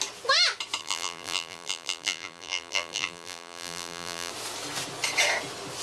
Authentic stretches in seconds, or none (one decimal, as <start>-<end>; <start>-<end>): 0.0-0.8; 4.3-5.8